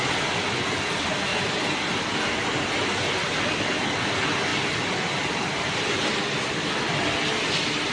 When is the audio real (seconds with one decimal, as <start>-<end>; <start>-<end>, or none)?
0.0-1.3; 3.3-7.9